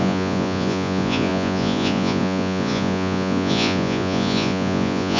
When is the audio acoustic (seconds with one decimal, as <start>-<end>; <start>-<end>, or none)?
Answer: none